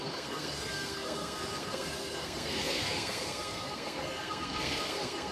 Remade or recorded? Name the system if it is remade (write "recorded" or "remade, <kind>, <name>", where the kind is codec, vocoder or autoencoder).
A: remade, codec, SNAC